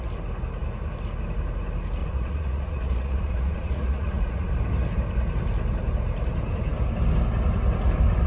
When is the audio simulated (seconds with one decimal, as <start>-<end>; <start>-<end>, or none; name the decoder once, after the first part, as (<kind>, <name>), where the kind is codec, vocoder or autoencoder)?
2.0-4.5 (vocoder, Vocos)